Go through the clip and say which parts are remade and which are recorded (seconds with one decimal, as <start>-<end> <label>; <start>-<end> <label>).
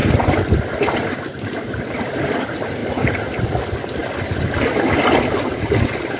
0.0-6.2 recorded